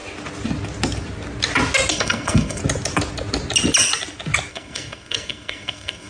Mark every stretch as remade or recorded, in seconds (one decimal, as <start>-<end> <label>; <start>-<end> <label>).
0.0-1.9 recorded; 1.9-2.6 remade; 2.6-4.5 recorded; 4.5-6.1 remade